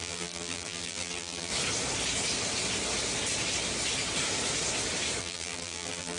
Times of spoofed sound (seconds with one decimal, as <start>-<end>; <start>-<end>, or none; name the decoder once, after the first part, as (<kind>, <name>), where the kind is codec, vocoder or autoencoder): 0.0-1.5 (vocoder, BigVGAN v2); 5.2-6.2